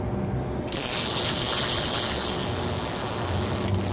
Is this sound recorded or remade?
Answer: recorded